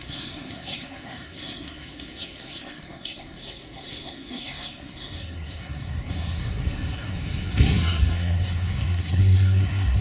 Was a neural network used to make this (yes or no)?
yes